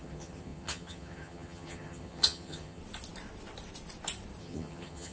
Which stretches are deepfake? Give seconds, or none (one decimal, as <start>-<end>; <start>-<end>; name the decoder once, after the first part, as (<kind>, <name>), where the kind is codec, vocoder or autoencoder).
0.0-2.8 (vocoder, HiFi-GAN); 4.4-5.1

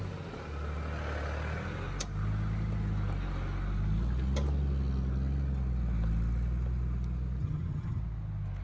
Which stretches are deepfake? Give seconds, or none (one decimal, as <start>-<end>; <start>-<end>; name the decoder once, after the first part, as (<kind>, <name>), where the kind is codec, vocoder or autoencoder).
7.4-8.0 (vocoder, HiFi-GAN)

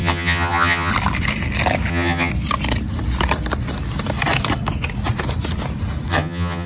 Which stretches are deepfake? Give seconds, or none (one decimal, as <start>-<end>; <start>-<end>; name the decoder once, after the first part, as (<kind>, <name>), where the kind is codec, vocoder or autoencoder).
0.0-0.9 (vocoder, HiFi-GAN); 1.9-2.3; 6.1-6.7

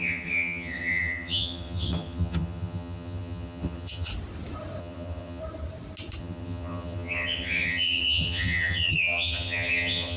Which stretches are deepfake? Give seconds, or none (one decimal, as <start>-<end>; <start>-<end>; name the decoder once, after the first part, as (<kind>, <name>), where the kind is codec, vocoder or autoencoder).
0.0-4.1 (vocoder, HiFi-GAN); 4.8-5.4; 6.2-10.2

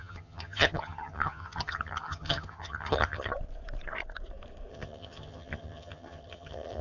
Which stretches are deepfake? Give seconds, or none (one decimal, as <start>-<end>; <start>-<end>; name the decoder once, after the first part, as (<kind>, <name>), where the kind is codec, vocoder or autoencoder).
0.0-3.3 (vocoder, HiFi-GAN); 4.7-6.8

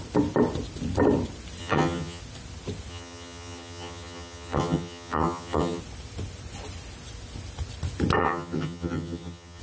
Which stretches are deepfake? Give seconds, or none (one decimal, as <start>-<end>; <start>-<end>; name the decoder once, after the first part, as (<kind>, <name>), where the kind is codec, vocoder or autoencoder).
1.6-2.2 (vocoder, HiFi-GAN); 2.9-5.8; 8.2-9.6

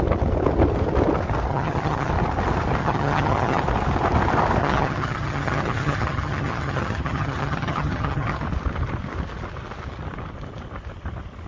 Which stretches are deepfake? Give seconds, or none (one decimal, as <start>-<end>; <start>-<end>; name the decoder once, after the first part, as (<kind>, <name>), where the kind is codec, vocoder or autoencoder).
1.5-2.1 (vocoder, HiFi-GAN); 2.8-3.6; 4.6-8.4

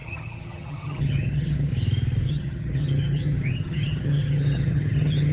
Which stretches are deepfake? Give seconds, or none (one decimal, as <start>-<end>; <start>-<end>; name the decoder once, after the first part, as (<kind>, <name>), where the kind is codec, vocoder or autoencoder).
0.0-1.7 (vocoder, HiFi-GAN); 2.3-5.3